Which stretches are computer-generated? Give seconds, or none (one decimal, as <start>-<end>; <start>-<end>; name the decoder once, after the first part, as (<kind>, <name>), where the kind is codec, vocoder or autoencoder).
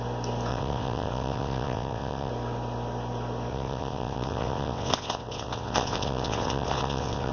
0.5-2.3 (vocoder, WaveNeXt); 3.5-7.3